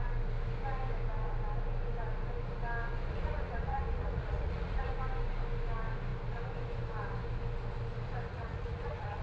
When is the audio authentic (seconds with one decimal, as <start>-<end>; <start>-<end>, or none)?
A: 0.0-3.1; 4.9-8.3